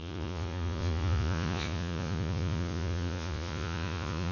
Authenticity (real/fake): fake